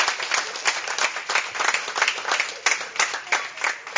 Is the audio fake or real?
real